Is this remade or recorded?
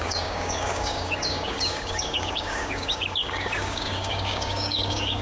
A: remade